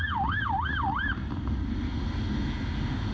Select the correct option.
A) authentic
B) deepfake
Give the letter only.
A